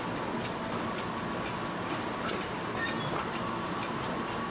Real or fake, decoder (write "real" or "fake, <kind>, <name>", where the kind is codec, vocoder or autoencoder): real